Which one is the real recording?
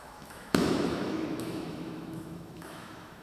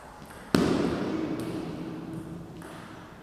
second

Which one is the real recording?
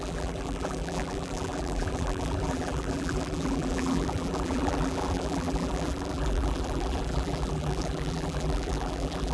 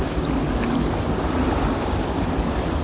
second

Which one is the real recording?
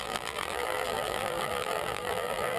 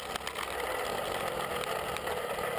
second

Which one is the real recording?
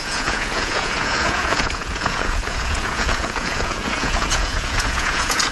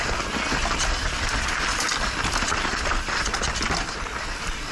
second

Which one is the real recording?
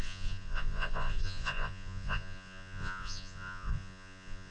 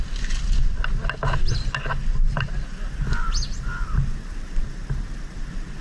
second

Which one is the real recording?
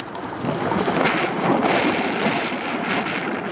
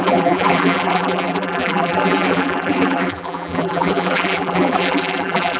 first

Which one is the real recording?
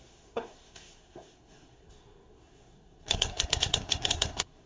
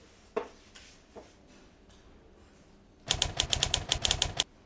second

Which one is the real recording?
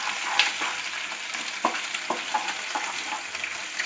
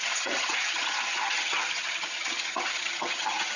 first